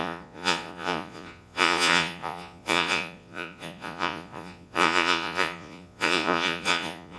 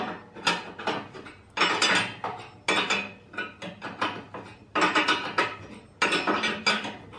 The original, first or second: second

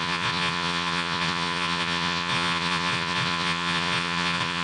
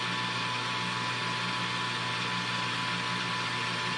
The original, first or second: second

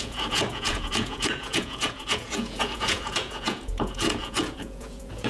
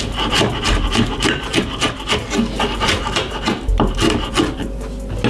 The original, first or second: second